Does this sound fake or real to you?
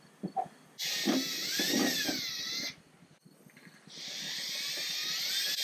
real